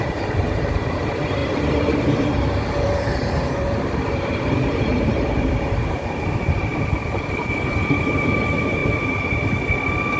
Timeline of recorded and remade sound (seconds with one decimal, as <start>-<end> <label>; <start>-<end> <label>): 0.0-6.7 remade; 6.7-7.2 recorded; 7.2-8.8 remade; 8.8-10.2 recorded